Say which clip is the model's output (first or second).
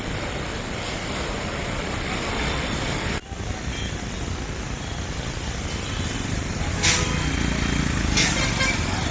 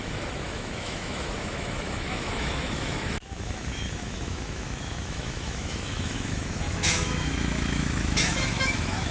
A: second